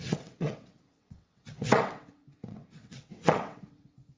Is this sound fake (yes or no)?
yes